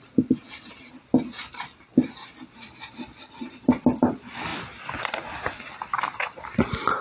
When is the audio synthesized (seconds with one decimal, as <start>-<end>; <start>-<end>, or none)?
none